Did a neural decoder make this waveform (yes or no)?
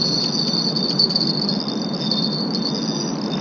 no